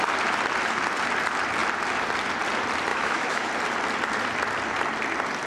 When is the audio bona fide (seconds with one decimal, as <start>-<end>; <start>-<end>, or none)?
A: 0.0-2.9; 3.5-5.5